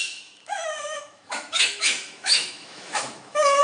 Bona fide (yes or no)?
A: no